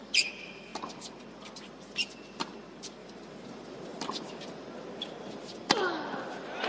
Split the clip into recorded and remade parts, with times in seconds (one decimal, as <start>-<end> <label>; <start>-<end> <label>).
0.0-3.0 recorded; 3.0-3.5 remade; 3.5-3.9 recorded; 3.9-6.7 remade